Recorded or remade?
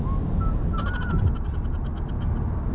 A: recorded